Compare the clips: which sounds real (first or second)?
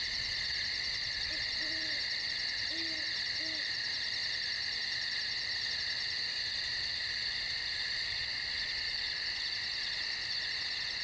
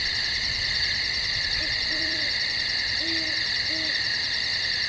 first